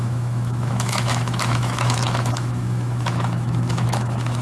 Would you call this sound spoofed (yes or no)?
yes